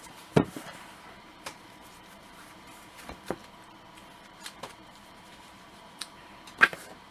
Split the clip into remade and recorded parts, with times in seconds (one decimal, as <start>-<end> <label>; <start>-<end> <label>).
0.0-3.4 remade; 3.4-4.3 recorded; 4.3-7.1 remade